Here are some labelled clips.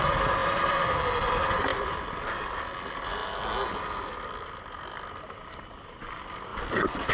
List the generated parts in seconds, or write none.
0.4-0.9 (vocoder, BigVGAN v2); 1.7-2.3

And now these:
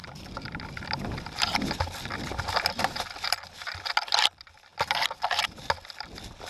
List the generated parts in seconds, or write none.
0.0-3.9 (vocoder, BigVGAN v2); 4.7-5.2

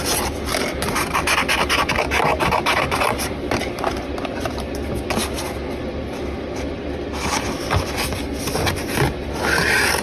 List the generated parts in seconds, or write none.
0.5-1.8 (vocoder, BigVGAN v2); 2.3-4.7

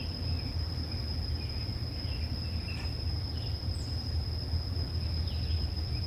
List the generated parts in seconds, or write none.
none